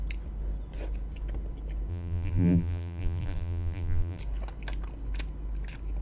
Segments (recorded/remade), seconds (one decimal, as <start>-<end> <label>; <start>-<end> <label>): 0.0-1.9 recorded; 1.9-4.2 remade; 4.2-6.0 recorded